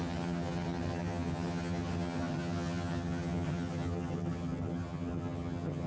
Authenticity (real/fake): fake